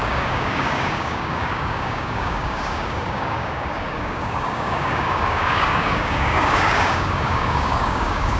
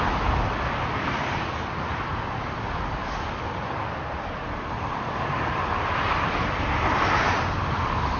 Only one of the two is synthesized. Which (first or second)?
first